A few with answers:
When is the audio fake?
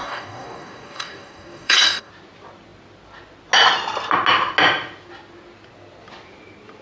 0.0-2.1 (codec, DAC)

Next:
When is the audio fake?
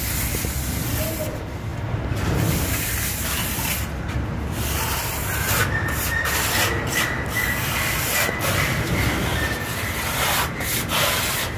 none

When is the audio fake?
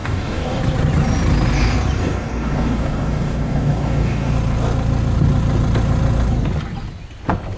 0.0-0.6 (codec, DAC); 2.0-4.3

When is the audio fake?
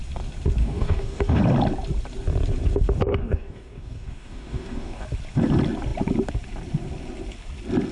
0.6-1.4 (codec, DAC); 3.2-5.0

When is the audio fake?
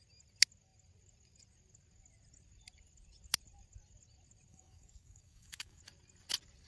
4.5-5.8 (codec, DAC)